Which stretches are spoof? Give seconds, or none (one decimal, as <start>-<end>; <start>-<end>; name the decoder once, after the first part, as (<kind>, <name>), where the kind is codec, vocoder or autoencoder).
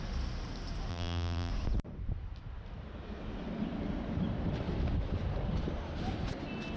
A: 0.9-1.5 (vocoder, BigVGAN v2)